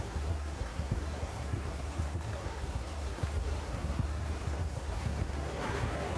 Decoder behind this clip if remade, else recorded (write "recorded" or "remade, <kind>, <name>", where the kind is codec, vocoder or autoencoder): remade, codec, SNAC